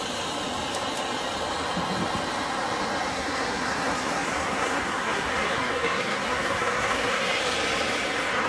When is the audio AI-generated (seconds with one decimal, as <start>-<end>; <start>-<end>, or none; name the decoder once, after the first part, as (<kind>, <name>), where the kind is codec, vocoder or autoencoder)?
3.1-7.4 (codec, SNAC)